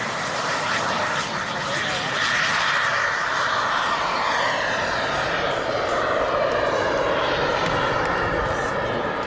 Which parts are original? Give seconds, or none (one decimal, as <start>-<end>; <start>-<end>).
0.0-2.9; 6.5-7.5; 8.2-9.3